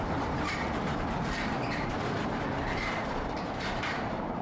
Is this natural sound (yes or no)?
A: no